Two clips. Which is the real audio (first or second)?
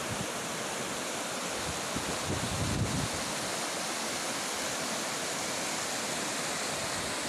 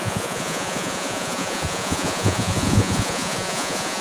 first